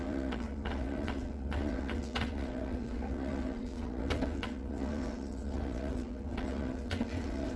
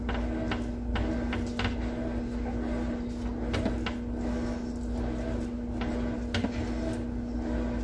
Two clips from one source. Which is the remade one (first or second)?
first